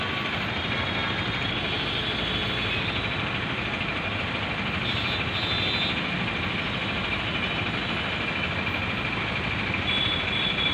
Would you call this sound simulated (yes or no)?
no